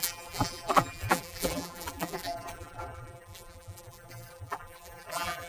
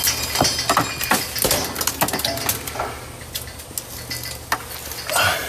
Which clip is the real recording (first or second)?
second